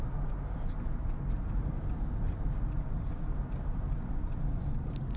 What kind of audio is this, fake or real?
real